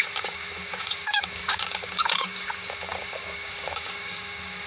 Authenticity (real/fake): fake